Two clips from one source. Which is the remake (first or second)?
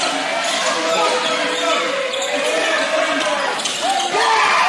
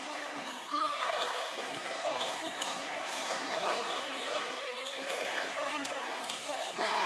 second